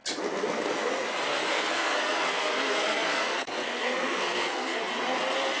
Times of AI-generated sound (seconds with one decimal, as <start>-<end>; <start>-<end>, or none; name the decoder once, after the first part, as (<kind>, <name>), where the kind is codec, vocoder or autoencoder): 1.5-4.8 (codec, SNAC)